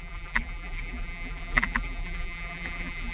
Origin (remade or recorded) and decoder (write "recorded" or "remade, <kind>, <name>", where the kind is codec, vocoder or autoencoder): remade, vocoder, BigVGAN v2